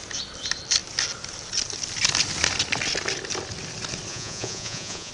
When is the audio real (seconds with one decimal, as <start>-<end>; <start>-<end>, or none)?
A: 0.0-4.1